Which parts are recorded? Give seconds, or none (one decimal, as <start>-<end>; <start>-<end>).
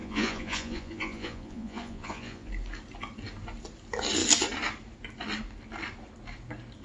2.5-6.8